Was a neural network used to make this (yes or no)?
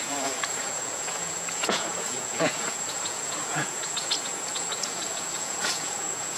yes